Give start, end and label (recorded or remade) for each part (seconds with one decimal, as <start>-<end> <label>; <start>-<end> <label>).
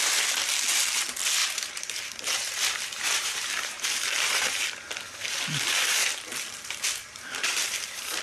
0.0-1.4 recorded; 1.4-4.6 remade; 4.6-7.0 recorded; 7.0-8.2 remade